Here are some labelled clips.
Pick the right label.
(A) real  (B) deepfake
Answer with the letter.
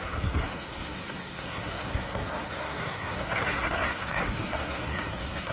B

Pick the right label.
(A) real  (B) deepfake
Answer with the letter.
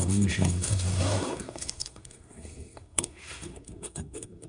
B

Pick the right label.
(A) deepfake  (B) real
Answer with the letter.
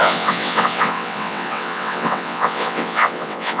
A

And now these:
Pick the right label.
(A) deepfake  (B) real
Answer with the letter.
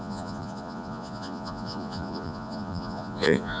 A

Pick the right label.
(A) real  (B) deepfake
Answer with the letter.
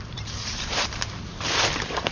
B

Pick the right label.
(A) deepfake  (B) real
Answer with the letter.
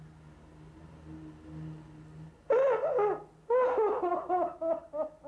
B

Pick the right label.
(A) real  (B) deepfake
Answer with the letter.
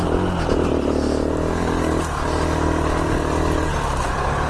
A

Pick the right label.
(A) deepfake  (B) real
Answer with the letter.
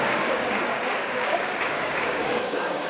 A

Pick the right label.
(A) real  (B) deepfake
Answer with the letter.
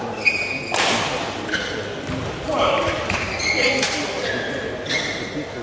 A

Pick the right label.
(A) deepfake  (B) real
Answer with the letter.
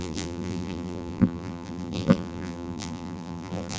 A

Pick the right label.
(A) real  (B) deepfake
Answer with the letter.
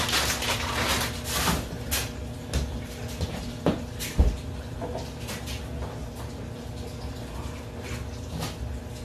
A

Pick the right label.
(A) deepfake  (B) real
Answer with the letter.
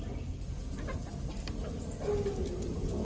B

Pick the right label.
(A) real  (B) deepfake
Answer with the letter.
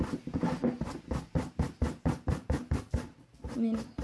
A